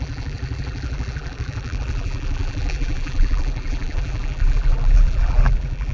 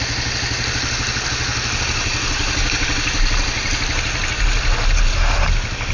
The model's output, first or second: first